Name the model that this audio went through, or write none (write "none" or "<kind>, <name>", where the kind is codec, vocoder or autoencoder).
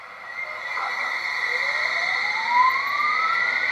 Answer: none